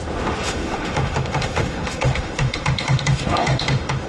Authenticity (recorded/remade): remade